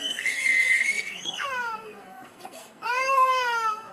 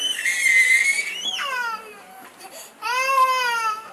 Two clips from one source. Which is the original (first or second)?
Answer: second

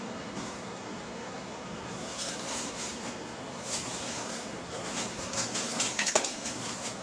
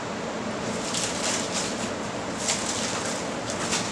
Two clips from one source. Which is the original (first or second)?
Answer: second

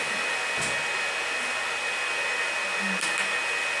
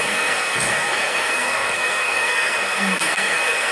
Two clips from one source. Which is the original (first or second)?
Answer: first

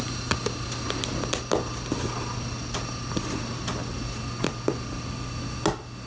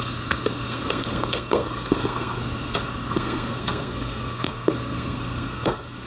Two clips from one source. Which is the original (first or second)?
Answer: first